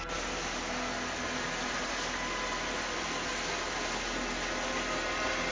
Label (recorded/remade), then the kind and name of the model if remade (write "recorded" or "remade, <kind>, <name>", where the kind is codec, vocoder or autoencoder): recorded